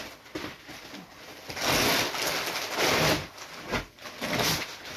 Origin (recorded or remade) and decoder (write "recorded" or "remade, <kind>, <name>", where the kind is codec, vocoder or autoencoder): recorded